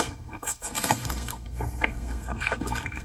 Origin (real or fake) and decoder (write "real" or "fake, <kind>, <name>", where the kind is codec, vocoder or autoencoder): fake, codec, SNAC